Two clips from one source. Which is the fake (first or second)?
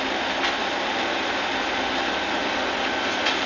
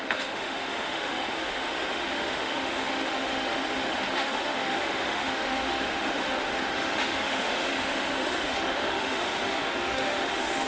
second